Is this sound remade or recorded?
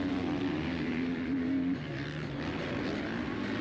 recorded